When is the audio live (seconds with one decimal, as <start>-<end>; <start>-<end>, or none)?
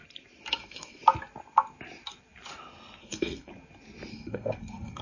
0.0-0.5; 1.0-3.0; 3.5-4.1